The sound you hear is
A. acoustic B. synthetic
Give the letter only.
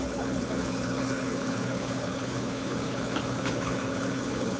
B